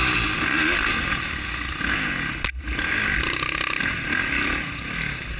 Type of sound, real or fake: real